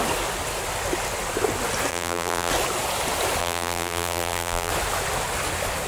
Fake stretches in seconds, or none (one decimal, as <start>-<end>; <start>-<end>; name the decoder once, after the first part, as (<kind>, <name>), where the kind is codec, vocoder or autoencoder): 1.9-2.5 (vocoder, BigVGAN v2); 3.4-4.7